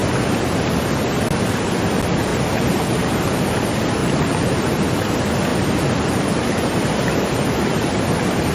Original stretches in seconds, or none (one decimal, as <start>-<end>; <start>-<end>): 0.0-2.3; 3.4-4.0; 4.6-5.5; 8.0-8.5